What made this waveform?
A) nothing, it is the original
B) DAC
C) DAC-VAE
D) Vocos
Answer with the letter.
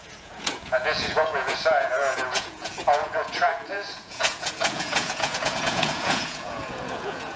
D